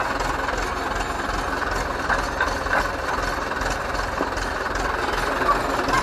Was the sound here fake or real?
real